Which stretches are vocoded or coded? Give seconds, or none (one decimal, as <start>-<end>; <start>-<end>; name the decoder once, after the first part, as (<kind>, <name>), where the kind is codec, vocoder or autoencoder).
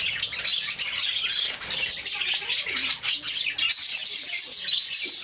0.5-3.6 (vocoder, BigVGAN v2)